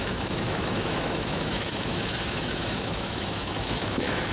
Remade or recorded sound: remade